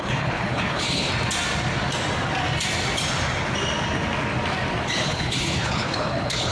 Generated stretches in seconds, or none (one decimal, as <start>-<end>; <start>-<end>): 0.0-1.1; 5.0-6.5